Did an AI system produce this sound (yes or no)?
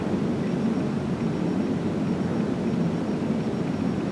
no